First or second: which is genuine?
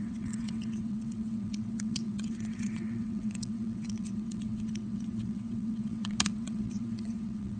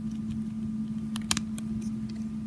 second